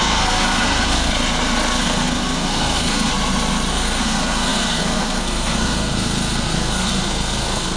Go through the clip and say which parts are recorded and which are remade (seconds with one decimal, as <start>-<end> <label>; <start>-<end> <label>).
0.0-1.1 remade; 1.1-1.8 recorded; 1.8-3.1 remade; 3.1-3.7 recorded; 3.7-7.8 remade